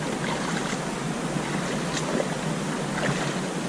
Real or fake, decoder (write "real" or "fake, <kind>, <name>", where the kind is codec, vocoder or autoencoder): real